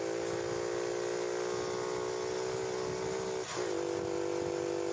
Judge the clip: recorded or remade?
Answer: recorded